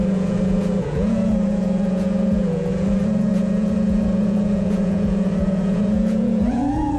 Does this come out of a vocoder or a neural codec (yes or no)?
yes